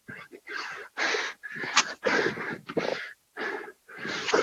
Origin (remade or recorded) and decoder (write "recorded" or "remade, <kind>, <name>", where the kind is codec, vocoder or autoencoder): recorded